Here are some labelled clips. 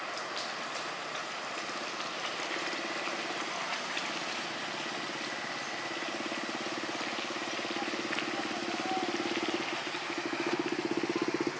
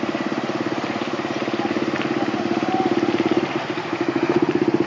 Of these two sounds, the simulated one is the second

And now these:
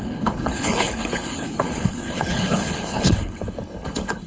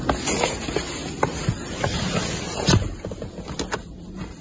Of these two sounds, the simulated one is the first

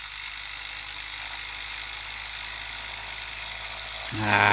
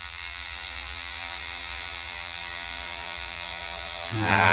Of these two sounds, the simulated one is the second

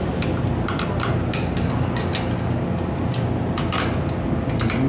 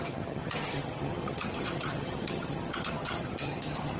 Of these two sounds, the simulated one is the second